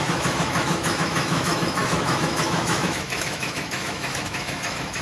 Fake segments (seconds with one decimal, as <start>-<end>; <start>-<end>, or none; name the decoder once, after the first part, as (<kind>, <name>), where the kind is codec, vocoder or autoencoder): 0.0-5.0 (autoencoder, DAC-VAE)